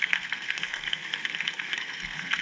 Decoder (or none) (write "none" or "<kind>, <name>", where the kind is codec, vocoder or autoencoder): codec, SNAC